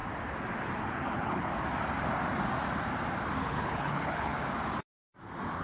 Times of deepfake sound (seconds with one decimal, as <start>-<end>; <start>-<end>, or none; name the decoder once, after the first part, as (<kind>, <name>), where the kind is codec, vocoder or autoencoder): 0.8-1.5 (codec, HILCodec); 3.4-4.3